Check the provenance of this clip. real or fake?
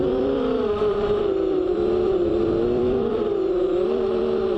fake